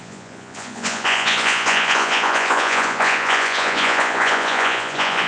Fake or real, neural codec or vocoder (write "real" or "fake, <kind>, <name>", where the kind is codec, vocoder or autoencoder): fake, vocoder, Vocos